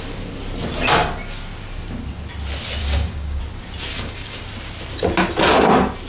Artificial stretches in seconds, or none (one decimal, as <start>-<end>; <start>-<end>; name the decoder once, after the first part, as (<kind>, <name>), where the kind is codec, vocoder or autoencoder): 2.8-3.4 (codec, DAC); 3.9-4.4